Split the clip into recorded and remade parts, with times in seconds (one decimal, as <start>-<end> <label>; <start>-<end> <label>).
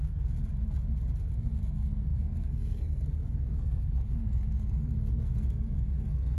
0.0-0.5 remade; 0.5-1.2 recorded; 1.2-6.4 remade